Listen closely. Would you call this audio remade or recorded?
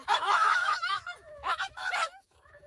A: remade